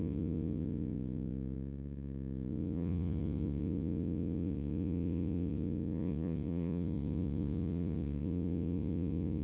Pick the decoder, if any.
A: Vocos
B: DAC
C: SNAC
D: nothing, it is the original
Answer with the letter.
A